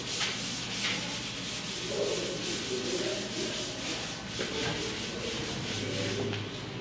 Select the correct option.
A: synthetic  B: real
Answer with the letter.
B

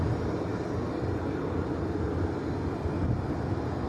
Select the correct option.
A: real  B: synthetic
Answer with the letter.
A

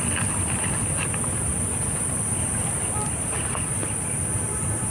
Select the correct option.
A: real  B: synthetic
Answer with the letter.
A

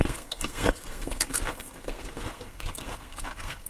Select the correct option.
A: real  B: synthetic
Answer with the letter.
B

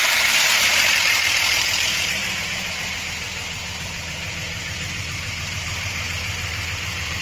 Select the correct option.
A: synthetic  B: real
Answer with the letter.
A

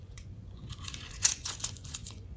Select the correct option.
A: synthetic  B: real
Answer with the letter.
A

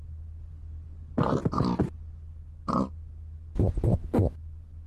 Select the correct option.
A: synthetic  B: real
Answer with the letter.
B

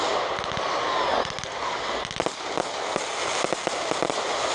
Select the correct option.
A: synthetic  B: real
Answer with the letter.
B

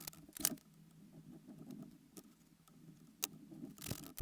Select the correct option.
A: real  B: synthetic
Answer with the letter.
A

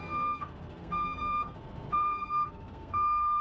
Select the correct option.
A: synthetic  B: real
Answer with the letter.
A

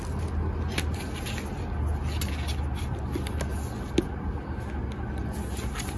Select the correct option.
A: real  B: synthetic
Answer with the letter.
A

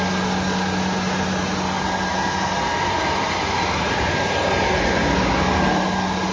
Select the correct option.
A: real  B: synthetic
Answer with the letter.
A